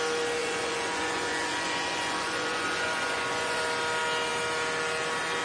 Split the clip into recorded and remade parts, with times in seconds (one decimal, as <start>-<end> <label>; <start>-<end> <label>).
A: 0.0-0.4 recorded; 0.4-3.6 remade; 3.6-5.4 recorded